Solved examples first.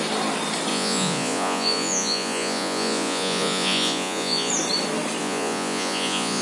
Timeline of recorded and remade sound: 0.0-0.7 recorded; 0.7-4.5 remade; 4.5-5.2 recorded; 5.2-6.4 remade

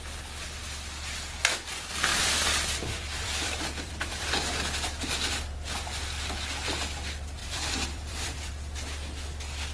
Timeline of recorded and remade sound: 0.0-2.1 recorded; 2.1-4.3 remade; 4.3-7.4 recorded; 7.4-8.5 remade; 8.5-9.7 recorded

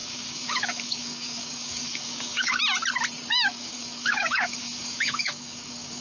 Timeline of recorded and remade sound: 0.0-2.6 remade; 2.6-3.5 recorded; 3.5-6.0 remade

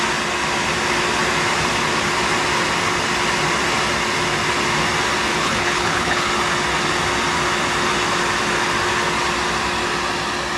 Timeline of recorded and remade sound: 0.0-5.3 recorded; 5.3-6.3 remade; 6.3-10.6 recorded

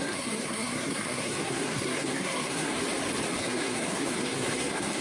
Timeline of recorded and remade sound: 0.0-2.8 remade; 2.8-3.4 recorded; 3.4-5.0 remade